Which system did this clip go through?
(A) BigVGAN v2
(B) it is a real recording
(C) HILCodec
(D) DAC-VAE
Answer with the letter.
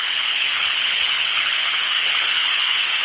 C